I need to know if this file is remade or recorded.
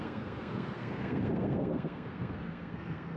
remade